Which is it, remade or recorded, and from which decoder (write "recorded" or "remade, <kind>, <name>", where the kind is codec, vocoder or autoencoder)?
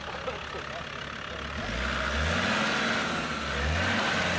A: recorded